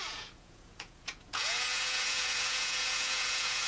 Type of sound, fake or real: fake